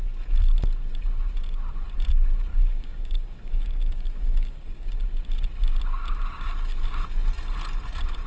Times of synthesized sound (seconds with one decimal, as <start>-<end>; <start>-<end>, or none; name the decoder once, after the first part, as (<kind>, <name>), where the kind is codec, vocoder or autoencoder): 2.5-4.9 (codec, DAC)